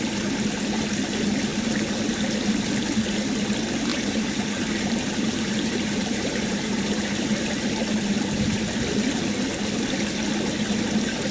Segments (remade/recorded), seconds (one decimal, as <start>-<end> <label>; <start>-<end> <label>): 0.0-3.9 recorded; 3.9-7.2 remade; 7.2-11.3 recorded